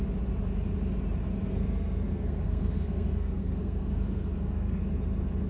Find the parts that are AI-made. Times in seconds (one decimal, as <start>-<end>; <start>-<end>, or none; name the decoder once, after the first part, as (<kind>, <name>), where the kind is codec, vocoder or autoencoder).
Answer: 1.5-4.8 (codec, SNAC)